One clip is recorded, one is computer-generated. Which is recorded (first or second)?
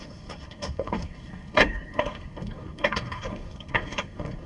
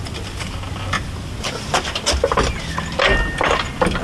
second